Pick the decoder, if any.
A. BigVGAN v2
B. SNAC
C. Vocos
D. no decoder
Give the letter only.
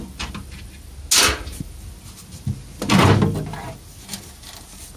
D